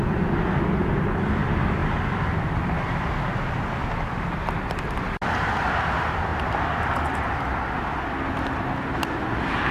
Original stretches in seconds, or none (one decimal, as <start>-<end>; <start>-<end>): 0.0-9.7

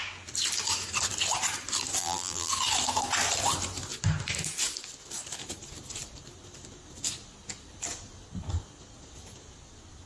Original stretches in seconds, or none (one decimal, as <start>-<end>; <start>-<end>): 0.0-2.0; 2.5-10.1

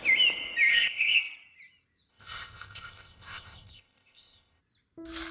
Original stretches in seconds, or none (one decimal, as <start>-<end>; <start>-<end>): 0.0-0.7; 1.2-2.1; 4.6-5.3

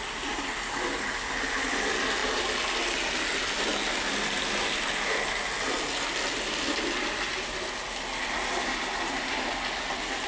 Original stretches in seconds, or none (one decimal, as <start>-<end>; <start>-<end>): 0.0-10.3